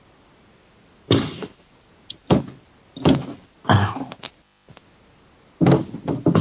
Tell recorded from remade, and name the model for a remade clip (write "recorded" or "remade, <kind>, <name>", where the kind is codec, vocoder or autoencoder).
recorded